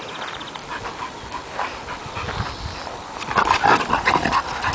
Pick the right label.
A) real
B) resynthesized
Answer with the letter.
A